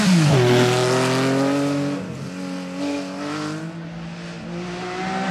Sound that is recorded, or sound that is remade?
recorded